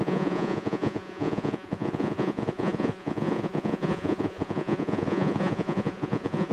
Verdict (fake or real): fake